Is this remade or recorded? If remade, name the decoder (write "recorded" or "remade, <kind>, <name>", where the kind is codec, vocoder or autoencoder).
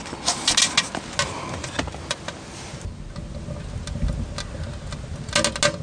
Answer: recorded